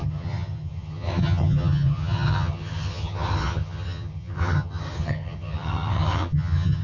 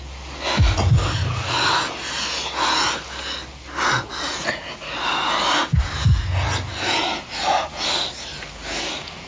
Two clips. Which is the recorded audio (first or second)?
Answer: second